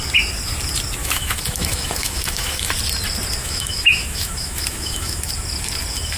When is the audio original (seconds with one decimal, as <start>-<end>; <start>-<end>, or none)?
0.0-1.0; 2.7-3.4; 5.3-6.2